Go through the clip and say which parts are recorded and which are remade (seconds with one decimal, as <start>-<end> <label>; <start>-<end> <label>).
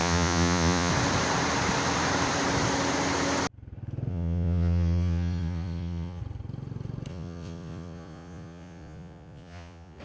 0.0-0.9 remade; 0.9-4.1 recorded; 4.1-6.2 remade; 6.2-7.1 recorded; 7.1-10.0 remade